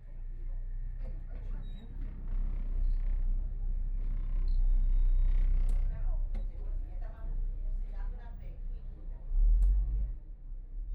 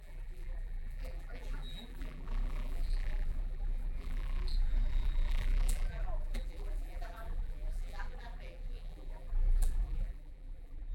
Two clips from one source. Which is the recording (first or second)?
first